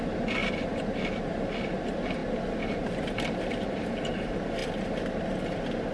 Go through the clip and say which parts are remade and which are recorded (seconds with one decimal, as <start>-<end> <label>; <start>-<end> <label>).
0.0-0.4 recorded; 0.4-1.3 remade; 1.3-5.9 recorded